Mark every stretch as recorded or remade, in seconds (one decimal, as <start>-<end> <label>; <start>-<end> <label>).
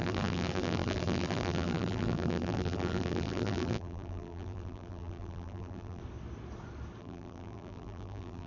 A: 0.0-6.0 remade; 6.0-7.0 recorded; 7.0-8.5 remade